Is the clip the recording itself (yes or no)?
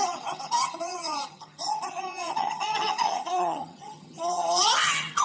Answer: no